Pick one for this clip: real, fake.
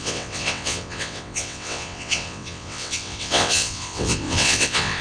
fake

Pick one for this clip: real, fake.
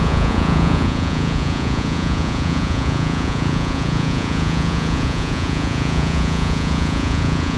fake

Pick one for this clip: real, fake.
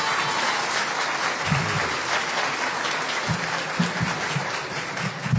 real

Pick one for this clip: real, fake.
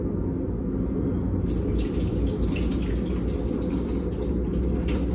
real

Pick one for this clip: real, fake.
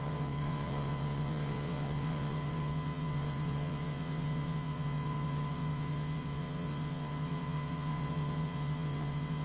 fake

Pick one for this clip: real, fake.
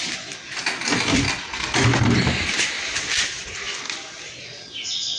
real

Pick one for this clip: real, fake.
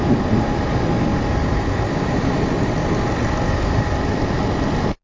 real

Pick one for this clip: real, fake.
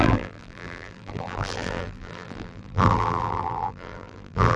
fake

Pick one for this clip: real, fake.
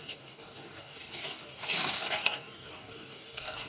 fake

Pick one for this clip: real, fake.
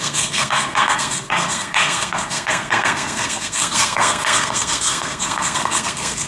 fake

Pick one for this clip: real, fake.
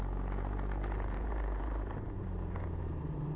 fake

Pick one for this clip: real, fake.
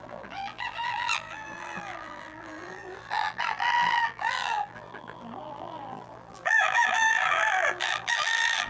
fake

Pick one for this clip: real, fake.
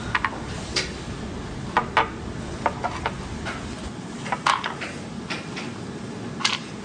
real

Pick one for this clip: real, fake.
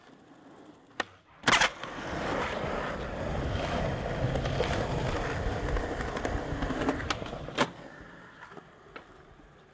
real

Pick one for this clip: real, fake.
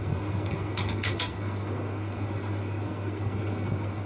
fake